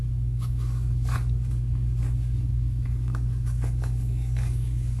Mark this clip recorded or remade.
remade